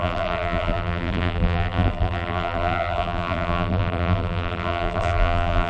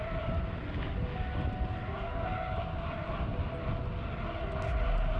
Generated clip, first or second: first